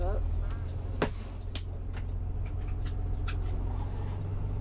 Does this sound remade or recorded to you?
recorded